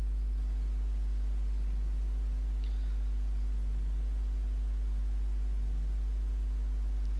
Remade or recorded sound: recorded